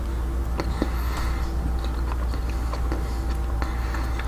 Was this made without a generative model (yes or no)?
yes